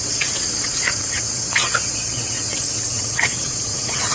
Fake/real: fake